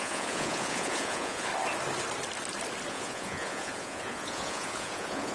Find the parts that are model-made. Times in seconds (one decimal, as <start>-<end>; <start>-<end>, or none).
0.0-1.5; 2.9-5.3